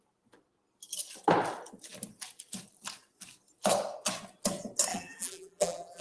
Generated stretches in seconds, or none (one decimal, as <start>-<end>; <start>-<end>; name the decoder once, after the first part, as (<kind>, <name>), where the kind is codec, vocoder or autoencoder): 4.9-6.0 (vocoder, BigVGAN v2)